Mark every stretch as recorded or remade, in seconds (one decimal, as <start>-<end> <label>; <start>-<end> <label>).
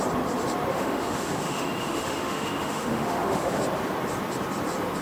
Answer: 0.0-0.7 recorded; 0.7-3.6 remade; 3.6-5.0 recorded